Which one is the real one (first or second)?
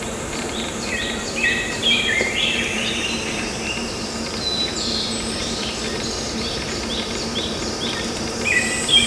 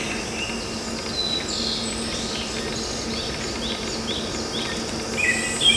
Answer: second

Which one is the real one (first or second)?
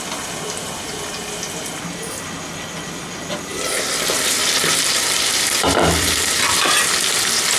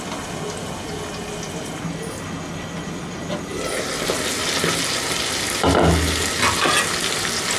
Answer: second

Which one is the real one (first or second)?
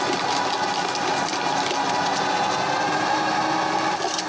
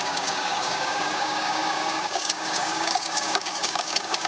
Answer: first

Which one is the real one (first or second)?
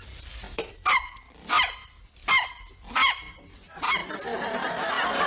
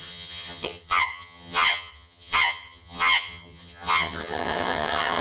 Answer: first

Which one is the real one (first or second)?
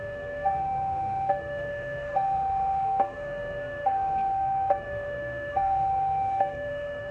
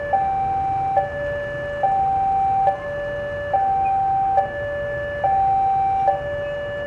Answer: second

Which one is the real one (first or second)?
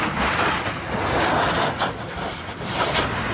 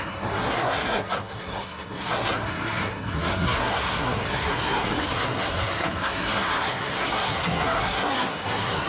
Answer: first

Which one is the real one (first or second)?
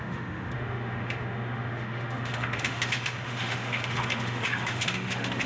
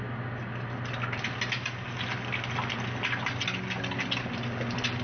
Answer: second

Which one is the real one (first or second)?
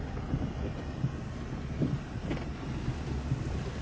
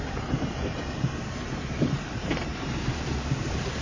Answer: first